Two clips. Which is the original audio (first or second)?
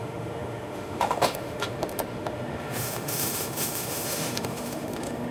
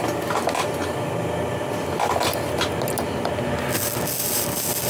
second